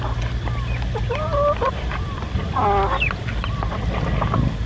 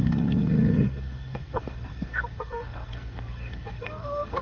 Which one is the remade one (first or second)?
second